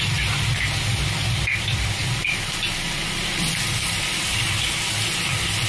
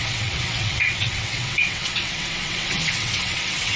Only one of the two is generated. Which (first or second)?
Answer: second